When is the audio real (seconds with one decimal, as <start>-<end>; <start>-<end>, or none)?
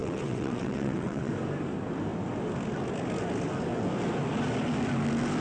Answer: 1.3-5.4